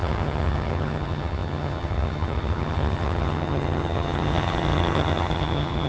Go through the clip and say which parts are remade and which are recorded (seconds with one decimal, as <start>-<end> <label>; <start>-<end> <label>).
0.0-5.9 remade